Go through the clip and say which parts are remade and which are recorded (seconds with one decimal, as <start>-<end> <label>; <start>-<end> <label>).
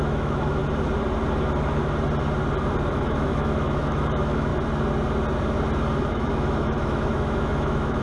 0.0-0.6 remade; 0.6-2.9 recorded; 2.9-4.5 remade; 4.5-6.1 recorded; 6.1-8.0 remade